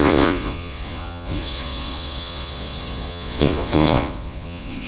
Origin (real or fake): fake